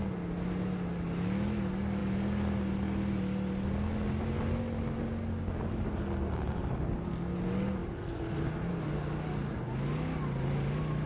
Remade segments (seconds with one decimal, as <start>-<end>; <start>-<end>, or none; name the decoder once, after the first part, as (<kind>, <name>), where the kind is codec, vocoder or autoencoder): 7.8-8.4 (vocoder, BigVGAN v2)